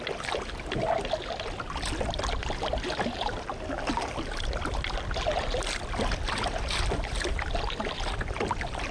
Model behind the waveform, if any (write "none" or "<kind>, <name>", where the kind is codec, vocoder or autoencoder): none